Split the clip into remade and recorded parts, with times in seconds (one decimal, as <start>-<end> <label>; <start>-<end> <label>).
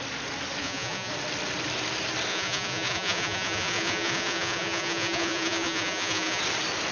0.0-0.6 recorded; 0.6-1.1 remade; 1.1-2.3 recorded; 2.3-6.4 remade; 6.4-6.9 recorded